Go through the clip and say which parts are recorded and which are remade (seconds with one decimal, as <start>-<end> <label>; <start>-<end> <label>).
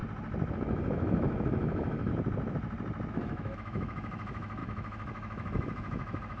0.0-0.5 recorded; 0.5-2.1 remade; 2.1-3.1 recorded; 3.1-6.4 remade